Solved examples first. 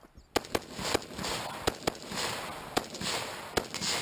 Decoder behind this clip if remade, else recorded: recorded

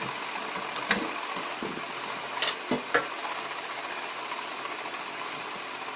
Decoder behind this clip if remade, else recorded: recorded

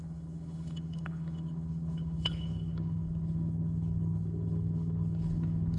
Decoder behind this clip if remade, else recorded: remade, codec, HILCodec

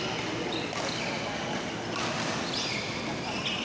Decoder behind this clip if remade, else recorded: recorded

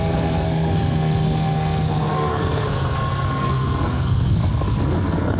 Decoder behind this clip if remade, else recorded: remade, codec, SNAC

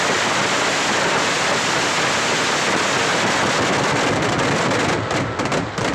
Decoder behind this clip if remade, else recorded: recorded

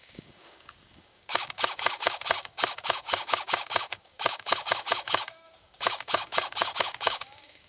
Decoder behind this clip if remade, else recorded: remade, codec, DAC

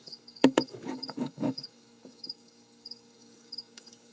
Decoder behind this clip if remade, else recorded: remade, codec, DAC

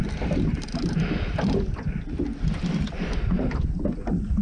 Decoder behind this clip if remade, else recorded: recorded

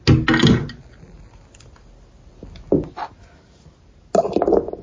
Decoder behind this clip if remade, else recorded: recorded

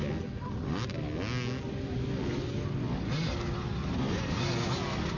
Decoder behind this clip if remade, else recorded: recorded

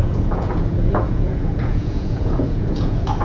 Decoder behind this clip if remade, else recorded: remade, vocoder, Vocos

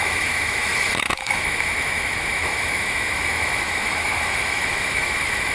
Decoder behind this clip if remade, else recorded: remade, autoencoder, DAC-VAE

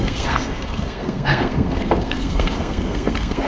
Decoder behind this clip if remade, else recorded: remade, codec, SNAC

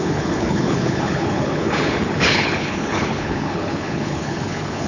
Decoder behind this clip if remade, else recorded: remade, codec, HILCodec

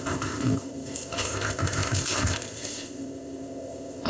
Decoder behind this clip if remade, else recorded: remade, codec, ZipCodec